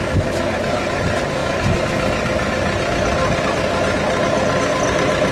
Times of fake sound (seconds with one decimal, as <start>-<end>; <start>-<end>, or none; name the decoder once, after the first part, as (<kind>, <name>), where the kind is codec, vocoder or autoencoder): none

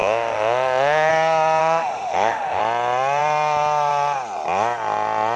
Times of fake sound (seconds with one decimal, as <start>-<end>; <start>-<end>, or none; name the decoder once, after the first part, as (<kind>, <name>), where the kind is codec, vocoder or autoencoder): 0.0-1.1 (autoencoder, DAC-VAE); 1.6-2.6